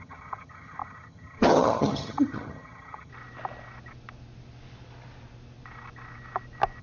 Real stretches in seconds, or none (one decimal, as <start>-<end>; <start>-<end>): 3.1-6.8